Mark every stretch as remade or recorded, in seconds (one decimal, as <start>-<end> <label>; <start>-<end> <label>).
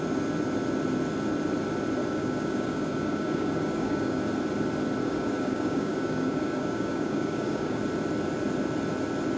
0.0-2.0 recorded; 2.0-4.2 remade; 4.2-5.0 recorded; 5.0-7.8 remade; 7.8-9.4 recorded